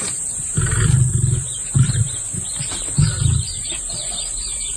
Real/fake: fake